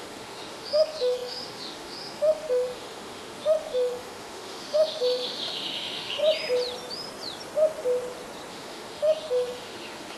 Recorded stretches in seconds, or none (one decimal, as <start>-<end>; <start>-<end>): 6.2-8.5